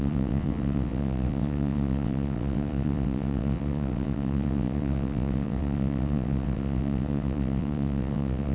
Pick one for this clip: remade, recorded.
remade